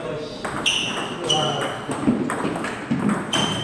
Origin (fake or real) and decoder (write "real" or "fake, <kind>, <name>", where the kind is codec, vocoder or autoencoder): real